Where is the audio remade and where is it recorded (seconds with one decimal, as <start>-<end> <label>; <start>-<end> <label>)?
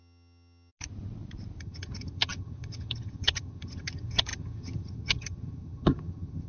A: 0.0-0.7 remade; 0.7-1.6 recorded; 1.6-6.5 remade